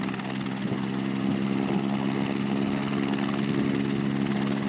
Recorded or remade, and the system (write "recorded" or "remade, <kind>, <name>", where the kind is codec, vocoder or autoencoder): recorded